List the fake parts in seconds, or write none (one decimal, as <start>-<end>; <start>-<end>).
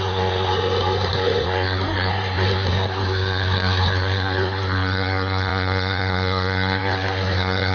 0.0-7.7